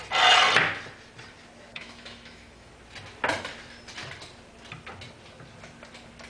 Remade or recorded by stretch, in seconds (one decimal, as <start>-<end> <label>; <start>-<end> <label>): 0.0-1.7 recorded; 1.7-2.7 remade; 2.7-6.3 recorded